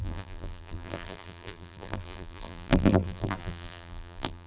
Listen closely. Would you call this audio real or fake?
fake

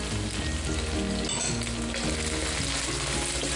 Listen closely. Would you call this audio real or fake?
real